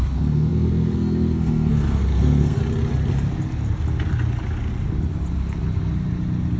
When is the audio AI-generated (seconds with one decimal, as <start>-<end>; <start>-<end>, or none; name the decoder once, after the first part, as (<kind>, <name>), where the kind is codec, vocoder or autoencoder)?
0.0-2.6 (codec, SNAC)